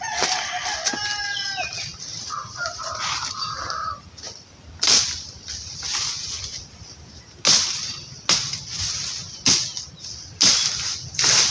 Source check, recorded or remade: recorded